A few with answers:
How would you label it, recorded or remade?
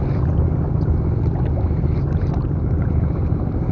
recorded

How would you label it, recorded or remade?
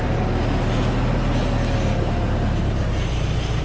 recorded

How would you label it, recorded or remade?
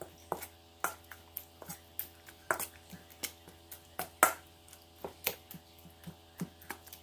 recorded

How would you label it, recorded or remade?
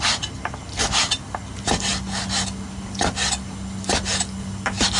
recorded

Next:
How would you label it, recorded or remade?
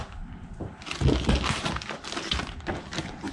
recorded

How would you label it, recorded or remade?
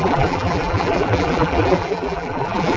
remade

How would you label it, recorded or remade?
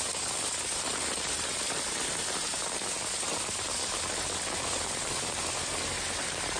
remade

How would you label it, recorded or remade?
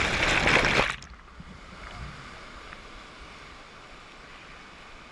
recorded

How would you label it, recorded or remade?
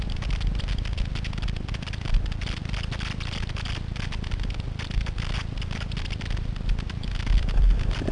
recorded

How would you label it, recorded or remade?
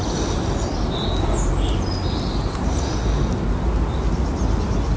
recorded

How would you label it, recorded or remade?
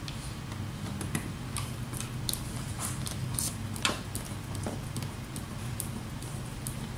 recorded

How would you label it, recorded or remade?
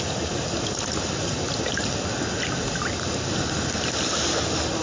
recorded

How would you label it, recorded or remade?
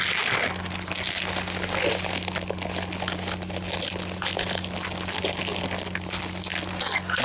recorded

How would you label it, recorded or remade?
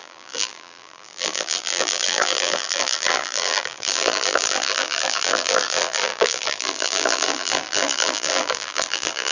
remade